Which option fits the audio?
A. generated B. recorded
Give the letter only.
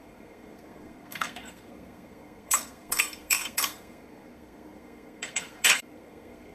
A